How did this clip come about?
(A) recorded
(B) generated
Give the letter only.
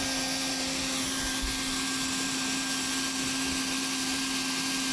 A